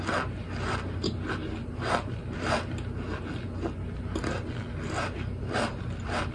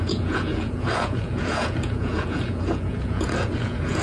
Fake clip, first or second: second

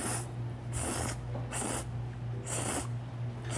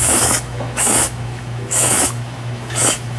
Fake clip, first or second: second